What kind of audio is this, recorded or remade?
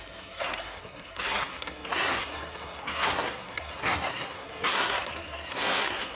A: remade